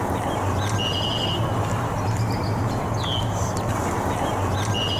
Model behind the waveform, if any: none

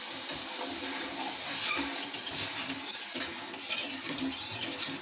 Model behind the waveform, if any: none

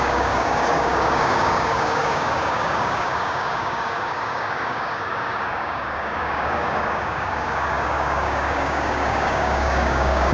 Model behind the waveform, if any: codec, DAC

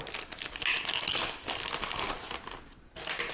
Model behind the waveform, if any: none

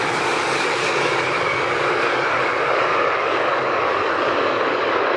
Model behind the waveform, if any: codec, DAC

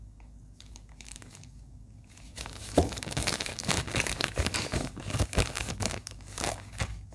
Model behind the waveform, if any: codec, DAC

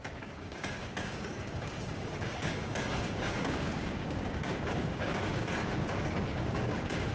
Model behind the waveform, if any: codec, DAC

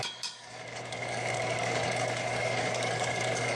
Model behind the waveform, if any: codec, DAC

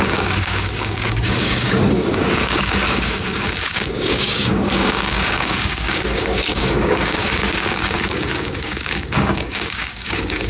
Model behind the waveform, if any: codec, DAC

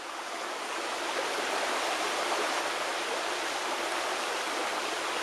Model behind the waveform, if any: none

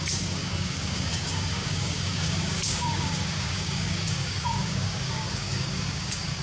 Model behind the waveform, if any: codec, DAC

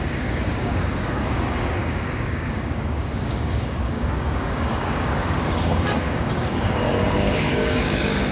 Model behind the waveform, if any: codec, DAC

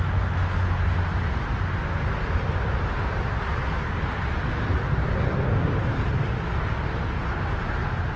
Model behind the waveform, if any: none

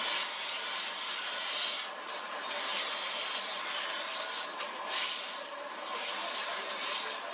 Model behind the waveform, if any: none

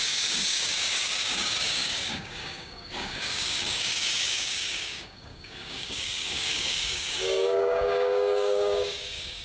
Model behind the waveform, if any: codec, DAC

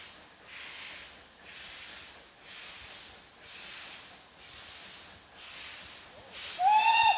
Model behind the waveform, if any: none